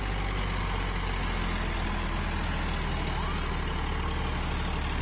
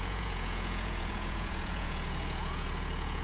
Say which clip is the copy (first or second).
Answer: second